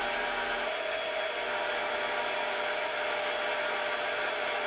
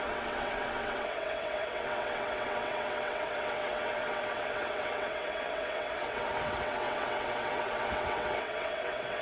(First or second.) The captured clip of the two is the first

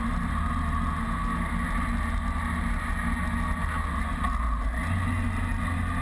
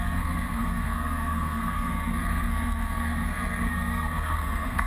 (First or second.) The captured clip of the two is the first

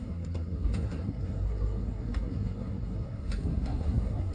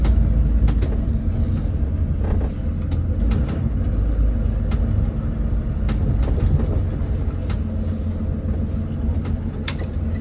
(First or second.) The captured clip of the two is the second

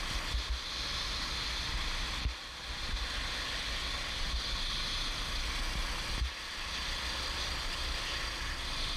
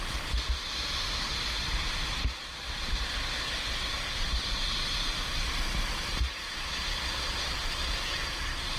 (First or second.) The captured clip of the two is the first